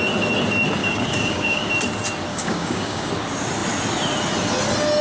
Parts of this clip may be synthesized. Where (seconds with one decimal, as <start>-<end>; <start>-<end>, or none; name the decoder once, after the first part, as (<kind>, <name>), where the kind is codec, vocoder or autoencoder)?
0.8-1.7 (codec, DAC); 2.3-3.1